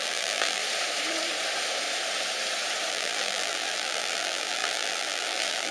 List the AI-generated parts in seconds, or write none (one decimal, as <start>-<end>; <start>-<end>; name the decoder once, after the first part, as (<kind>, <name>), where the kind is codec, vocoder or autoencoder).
0.0-0.6 (vocoder, BigVGAN v2); 2.9-5.7